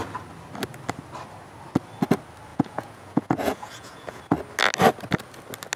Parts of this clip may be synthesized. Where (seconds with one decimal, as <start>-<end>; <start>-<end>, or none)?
2.5-4.2